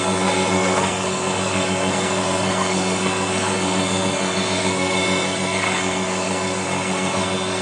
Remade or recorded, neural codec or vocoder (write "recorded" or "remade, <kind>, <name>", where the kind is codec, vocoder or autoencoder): remade, codec, SNAC